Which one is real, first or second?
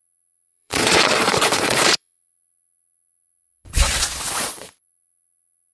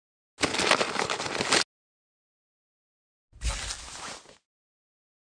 second